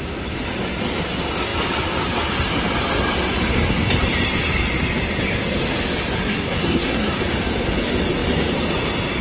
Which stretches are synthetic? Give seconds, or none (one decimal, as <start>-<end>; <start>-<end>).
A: 6.2-7.2